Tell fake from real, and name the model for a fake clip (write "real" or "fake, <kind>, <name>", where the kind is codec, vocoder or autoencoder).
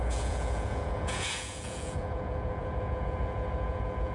fake, vocoder, Vocos